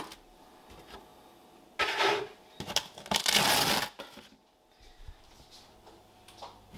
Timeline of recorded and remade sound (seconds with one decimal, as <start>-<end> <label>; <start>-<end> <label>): 0.0-6.8 recorded

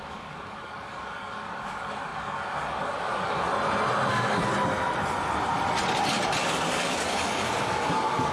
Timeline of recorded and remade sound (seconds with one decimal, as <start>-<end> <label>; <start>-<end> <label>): 0.0-3.5 remade; 3.5-4.1 recorded; 4.1-4.5 remade; 4.5-6.4 recorded; 6.4-8.3 remade

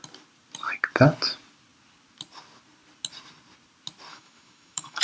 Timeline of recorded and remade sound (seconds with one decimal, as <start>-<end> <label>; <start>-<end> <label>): 0.0-4.1 recorded; 4.1-5.0 remade

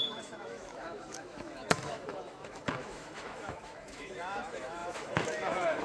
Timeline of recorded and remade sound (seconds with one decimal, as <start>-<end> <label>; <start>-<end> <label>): 0.0-5.8 remade

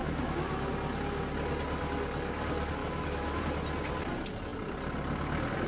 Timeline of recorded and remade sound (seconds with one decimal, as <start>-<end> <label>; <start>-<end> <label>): 0.0-0.7 remade; 0.7-2.8 recorded; 2.8-3.4 remade; 3.4-5.7 recorded